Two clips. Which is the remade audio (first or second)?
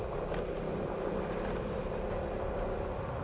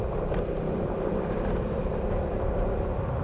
second